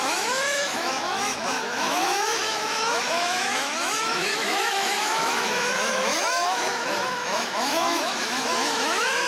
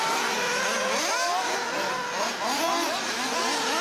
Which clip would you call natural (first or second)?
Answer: second